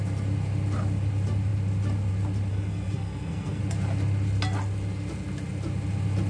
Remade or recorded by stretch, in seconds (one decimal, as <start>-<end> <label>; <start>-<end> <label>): 0.0-2.5 recorded; 2.5-3.6 remade; 3.6-6.3 recorded